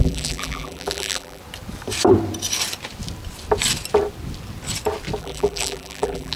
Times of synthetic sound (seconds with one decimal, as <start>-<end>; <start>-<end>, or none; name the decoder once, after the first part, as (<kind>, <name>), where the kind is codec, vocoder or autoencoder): 0.0-1.4 (vocoder, BigVGAN v2); 5.2-6.4